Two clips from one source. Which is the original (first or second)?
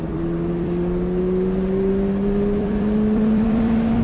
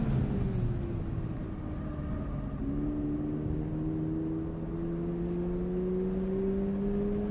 second